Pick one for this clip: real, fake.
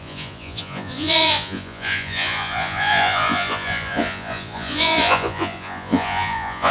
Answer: fake